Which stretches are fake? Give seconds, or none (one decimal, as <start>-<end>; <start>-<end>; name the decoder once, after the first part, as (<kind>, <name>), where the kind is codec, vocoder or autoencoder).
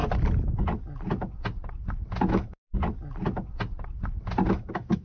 2.2-2.8 (autoencoder, DAC-VAE); 4.5-5.0